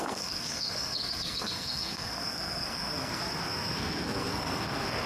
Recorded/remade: remade